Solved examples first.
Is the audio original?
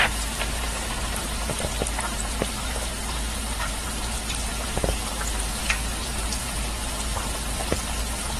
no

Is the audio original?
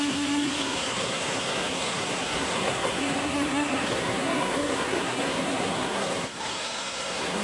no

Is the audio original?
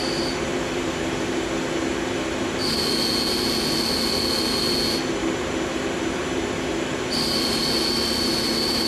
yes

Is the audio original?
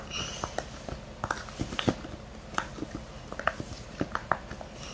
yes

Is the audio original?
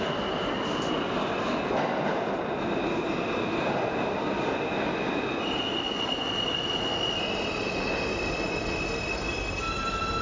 yes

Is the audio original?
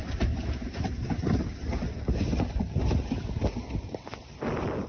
yes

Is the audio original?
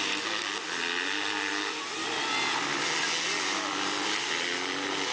yes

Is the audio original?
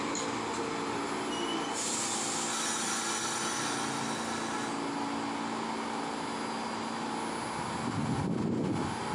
yes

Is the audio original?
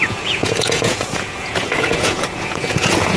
no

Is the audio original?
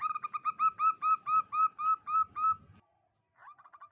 yes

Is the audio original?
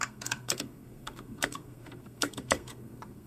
no